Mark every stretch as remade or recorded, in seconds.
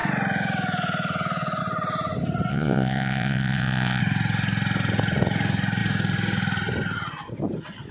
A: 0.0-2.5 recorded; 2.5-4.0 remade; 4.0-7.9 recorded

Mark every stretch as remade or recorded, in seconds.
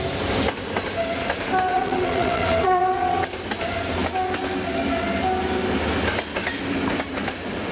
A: 0.0-1.7 recorded; 1.7-3.3 remade; 3.3-7.7 recorded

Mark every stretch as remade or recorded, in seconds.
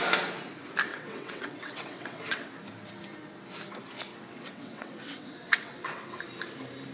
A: 0.0-0.9 recorded; 0.9-2.5 remade; 2.5-4.1 recorded; 4.1-6.2 remade; 6.2-6.9 recorded